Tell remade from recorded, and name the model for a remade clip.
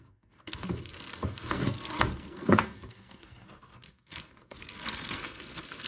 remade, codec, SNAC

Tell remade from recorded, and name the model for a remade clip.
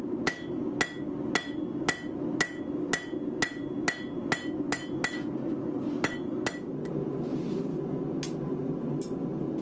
recorded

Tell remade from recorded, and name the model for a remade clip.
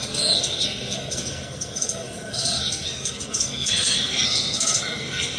remade, codec, SNAC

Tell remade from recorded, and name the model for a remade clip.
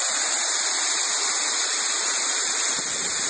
recorded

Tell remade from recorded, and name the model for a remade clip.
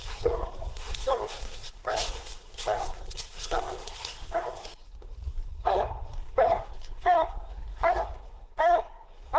remade, codec, SNAC